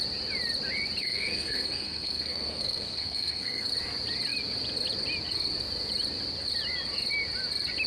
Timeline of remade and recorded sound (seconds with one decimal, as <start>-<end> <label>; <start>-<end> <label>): 0.0-1.0 recorded; 1.0-3.7 remade; 3.7-7.9 recorded